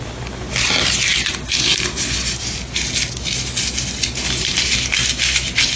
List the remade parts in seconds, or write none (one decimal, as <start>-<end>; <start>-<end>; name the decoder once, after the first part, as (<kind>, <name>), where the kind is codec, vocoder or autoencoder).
none